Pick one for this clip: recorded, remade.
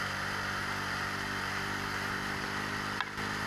recorded